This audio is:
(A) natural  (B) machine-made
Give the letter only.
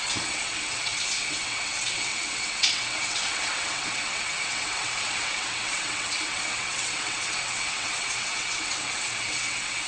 B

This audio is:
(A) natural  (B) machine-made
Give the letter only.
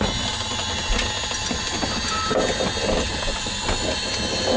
A